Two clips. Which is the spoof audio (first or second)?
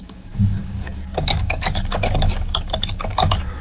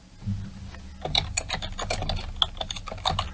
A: first